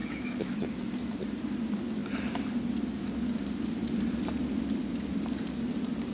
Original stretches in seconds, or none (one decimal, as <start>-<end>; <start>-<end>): 0.9-6.1